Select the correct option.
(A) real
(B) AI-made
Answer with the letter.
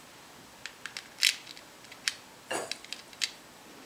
A